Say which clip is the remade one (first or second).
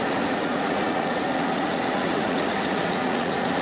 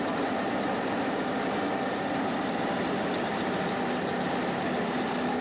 first